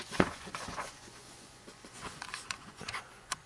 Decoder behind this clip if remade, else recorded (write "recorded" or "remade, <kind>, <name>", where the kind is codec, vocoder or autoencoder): remade, vocoder, Vocos